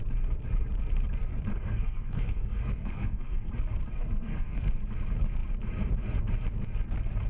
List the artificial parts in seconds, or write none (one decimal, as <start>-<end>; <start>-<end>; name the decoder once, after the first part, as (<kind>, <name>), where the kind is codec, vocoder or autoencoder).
1.5-3.5 (codec, SNAC); 4.0-4.7